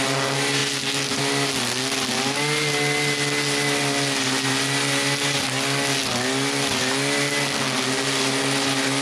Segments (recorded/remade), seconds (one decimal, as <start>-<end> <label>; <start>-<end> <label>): 0.0-9.0 recorded